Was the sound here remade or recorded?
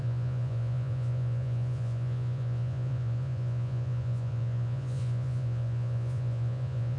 remade